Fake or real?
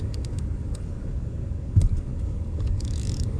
fake